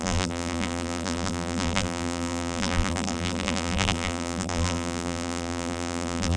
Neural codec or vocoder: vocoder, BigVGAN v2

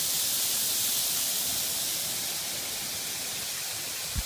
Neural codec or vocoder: none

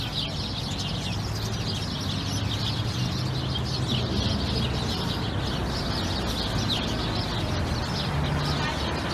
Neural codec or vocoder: none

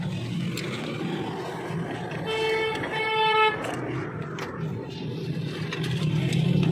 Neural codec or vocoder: none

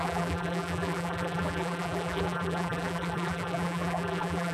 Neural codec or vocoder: vocoder, BigVGAN v2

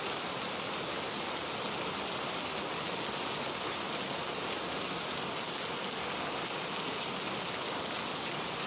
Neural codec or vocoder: none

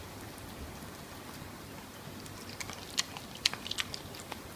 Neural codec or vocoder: none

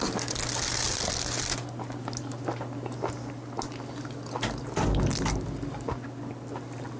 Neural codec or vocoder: none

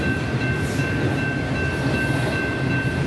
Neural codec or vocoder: none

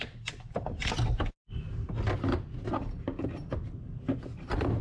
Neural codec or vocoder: none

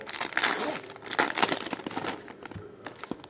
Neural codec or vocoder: none